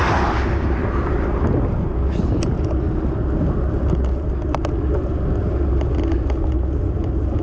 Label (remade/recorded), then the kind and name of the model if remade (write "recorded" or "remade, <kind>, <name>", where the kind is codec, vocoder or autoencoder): recorded